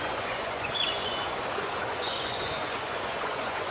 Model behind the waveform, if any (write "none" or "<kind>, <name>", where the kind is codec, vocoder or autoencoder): vocoder, Vocos